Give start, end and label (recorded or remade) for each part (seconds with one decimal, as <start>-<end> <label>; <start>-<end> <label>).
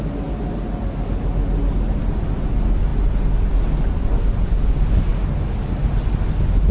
0.0-6.7 recorded